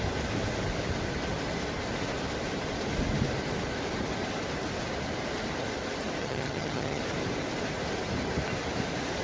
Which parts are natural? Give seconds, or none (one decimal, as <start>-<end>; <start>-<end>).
0.0-6.2; 7.0-9.2